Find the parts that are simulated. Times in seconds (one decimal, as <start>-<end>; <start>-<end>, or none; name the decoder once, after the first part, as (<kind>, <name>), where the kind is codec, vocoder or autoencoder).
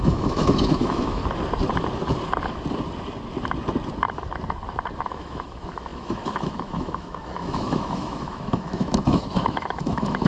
0.0-1.2 (autoencoder, DAC-VAE); 5.0-10.3